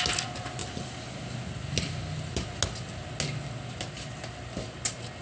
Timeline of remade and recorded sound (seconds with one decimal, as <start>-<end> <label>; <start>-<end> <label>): 0.0-5.2 recorded